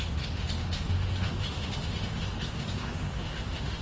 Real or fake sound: fake